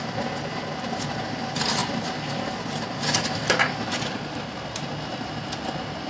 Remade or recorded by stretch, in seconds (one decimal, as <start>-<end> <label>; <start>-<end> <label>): 0.0-6.1 recorded